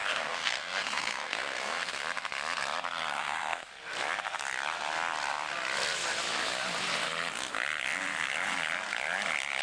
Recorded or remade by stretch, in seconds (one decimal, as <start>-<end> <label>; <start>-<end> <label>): 0.0-2.0 remade; 2.0-3.2 recorded; 3.2-3.7 remade; 3.7-9.6 recorded